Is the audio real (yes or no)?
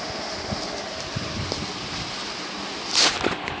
yes